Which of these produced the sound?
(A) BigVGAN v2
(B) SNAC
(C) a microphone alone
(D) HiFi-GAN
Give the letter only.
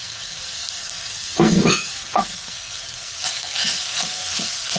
B